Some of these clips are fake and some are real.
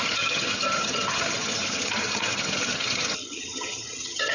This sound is fake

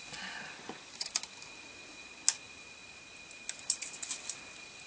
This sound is real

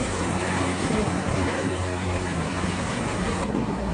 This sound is fake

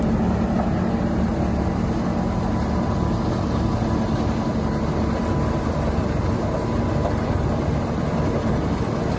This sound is real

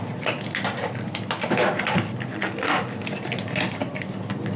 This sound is real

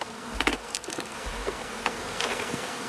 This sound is fake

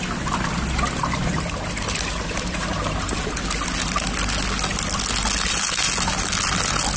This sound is real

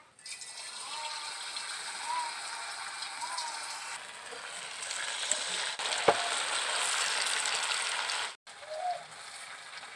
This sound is real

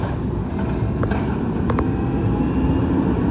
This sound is real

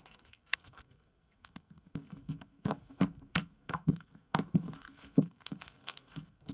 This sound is fake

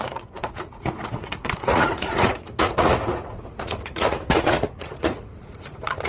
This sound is fake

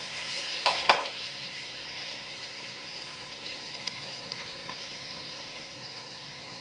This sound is fake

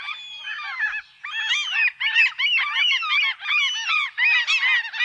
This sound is real